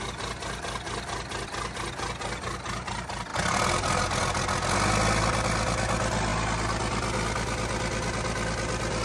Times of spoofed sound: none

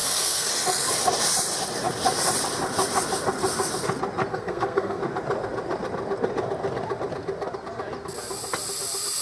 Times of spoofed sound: 0.0-0.5 (codec, SNAC); 4.3-5.0

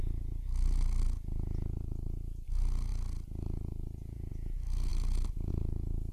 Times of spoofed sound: none

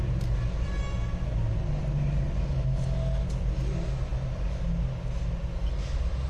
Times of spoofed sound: none

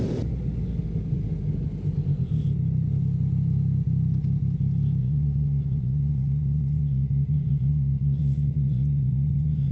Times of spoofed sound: 5.0-9.7 (vocoder, Vocos)

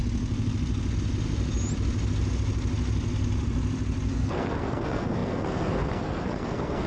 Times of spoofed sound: 4.1-6.9 (codec, SNAC)